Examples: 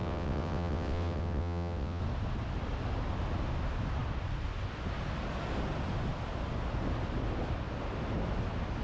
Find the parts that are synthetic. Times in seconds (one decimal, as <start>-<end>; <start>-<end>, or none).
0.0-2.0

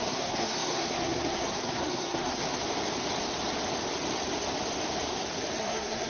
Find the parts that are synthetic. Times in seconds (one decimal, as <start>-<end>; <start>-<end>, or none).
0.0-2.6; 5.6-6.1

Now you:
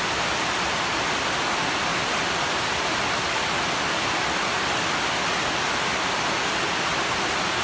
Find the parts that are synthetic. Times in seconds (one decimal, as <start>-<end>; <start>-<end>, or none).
none

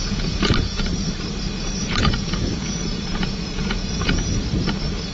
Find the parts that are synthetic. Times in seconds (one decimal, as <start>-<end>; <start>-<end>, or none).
0.0-0.8; 1.8-4.3

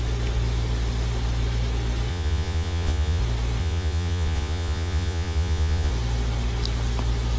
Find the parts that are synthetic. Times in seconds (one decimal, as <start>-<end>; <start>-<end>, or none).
2.1-3.2; 3.6-5.9

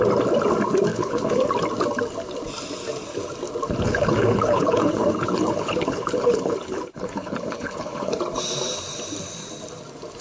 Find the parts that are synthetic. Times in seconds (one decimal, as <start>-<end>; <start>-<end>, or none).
0.9-1.5; 3.9-8.2